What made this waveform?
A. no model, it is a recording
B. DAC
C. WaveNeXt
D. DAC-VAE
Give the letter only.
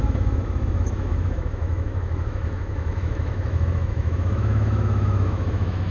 D